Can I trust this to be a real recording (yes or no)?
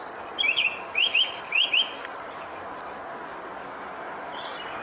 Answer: yes